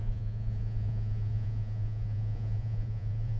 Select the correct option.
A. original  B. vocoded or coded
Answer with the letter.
B